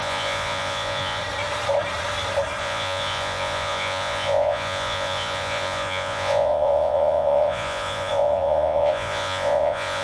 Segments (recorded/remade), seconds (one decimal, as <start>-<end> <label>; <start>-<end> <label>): 0.0-1.2 remade; 1.2-2.6 recorded; 2.6-10.0 remade